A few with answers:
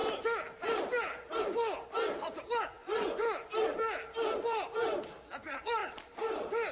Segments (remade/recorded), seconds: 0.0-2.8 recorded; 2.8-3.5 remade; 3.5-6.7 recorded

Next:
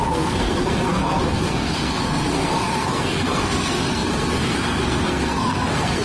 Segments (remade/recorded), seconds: 0.0-6.0 remade

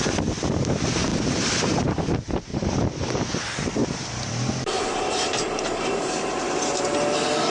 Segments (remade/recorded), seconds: 0.0-1.1 recorded; 1.1-1.9 remade; 1.9-3.8 recorded; 3.8-6.9 remade; 6.9-7.5 recorded